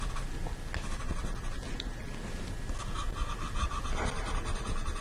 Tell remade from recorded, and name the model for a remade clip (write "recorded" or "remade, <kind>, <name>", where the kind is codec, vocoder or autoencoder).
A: recorded